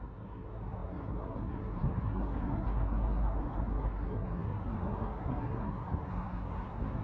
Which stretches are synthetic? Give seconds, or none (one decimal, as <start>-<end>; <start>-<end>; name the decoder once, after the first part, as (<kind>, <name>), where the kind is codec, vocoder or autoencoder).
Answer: 0.0-7.0 (codec, SNAC)